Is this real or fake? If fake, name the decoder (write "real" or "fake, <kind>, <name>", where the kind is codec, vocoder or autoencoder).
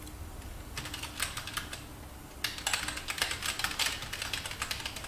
real